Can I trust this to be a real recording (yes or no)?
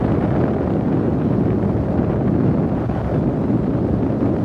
yes